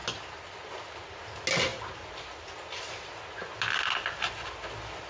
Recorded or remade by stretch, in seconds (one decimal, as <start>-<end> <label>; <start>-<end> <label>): 0.0-5.1 recorded